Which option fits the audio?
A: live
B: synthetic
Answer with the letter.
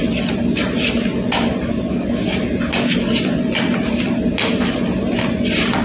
A